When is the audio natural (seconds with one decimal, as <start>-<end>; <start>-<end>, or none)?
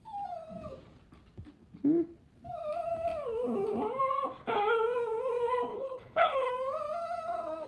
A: 0.0-5.7; 6.5-7.7